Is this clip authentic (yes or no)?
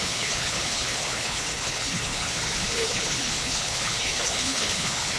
no